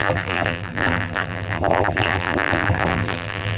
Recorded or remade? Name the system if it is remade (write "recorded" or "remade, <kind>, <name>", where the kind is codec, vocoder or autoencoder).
remade, vocoder, BigVGAN v2